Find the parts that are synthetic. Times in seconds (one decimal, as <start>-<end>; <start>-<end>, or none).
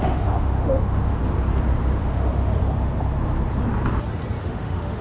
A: 0.0-1.2; 2.0-2.5; 4.4-5.0